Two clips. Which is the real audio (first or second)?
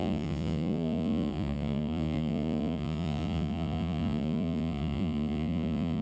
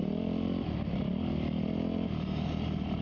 second